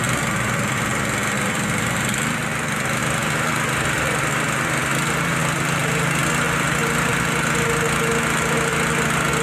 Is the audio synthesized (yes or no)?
no